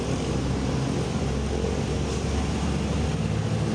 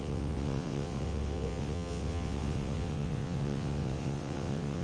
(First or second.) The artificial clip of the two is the second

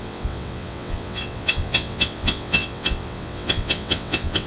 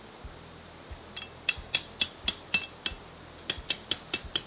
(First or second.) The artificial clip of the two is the first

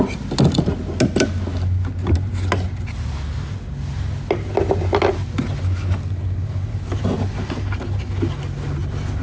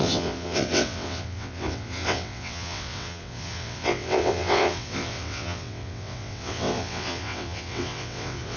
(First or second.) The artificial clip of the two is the second